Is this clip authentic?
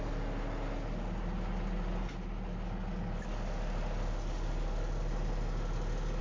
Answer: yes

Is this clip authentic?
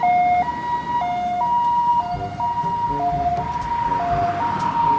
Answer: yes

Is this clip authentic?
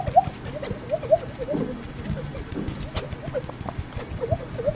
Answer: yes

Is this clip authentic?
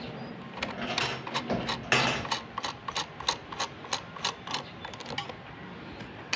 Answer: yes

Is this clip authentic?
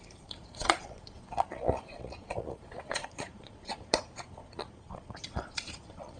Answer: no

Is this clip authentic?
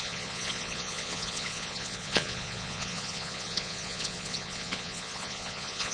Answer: no